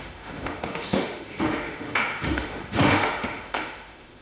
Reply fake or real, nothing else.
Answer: fake